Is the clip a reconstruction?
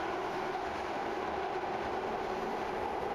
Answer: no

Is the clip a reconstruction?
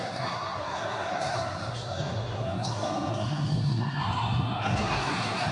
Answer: yes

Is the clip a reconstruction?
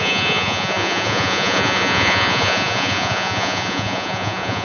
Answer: yes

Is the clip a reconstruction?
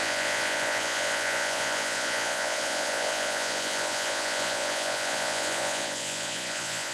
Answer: yes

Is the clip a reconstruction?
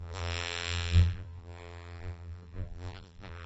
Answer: yes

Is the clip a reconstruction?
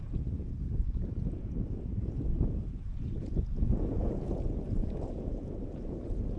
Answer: yes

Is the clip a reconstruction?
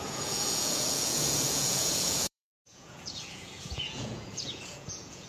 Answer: yes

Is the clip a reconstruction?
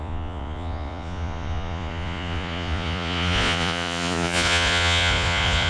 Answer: yes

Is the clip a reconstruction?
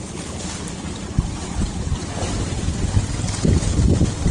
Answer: no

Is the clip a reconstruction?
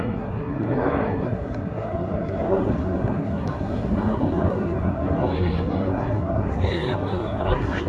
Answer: yes